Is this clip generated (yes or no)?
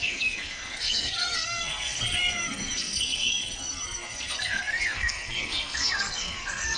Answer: yes